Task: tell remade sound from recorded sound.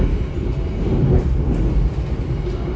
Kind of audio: recorded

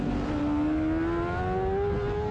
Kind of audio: recorded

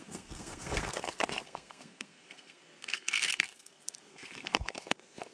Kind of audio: remade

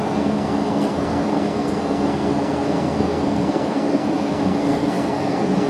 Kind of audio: remade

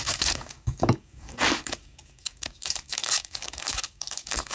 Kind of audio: remade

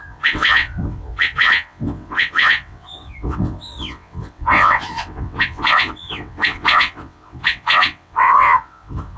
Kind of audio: remade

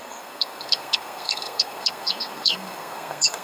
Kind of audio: remade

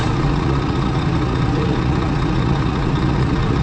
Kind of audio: remade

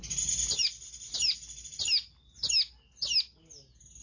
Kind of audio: recorded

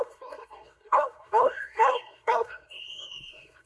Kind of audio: remade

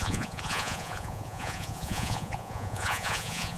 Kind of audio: remade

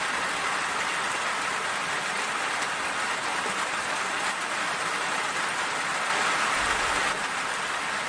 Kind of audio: recorded